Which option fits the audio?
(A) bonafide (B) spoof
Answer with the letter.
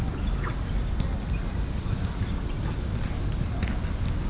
A